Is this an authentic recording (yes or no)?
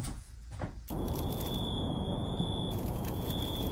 no